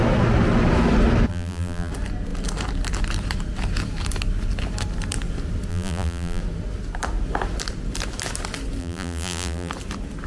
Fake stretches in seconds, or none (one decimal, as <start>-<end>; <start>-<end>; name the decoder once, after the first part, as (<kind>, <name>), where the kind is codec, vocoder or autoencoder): 1.3-1.9 (vocoder, BigVGAN v2); 5.7-6.4; 8.8-9.7